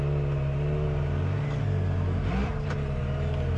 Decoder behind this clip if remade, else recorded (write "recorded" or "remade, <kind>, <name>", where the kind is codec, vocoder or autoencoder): recorded